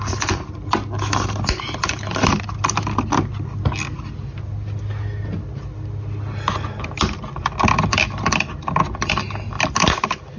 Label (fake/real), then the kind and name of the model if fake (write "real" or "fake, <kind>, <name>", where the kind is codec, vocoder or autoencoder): real